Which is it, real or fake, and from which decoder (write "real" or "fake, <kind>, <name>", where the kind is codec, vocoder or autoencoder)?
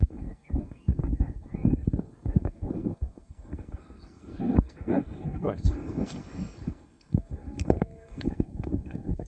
fake, codec, SNAC